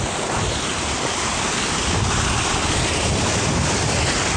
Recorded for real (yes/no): yes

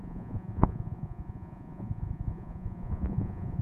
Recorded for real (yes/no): no